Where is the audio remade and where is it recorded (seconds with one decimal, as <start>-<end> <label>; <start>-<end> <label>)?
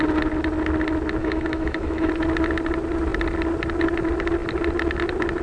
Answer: 0.0-1.2 recorded; 1.2-2.1 remade; 2.1-5.4 recorded